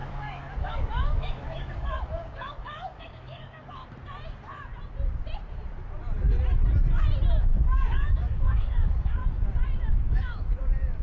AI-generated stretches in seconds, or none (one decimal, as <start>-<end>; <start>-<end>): 0.0-3.8; 7.4-9.2; 9.9-11.0